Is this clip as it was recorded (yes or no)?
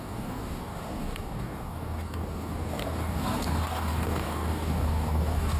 no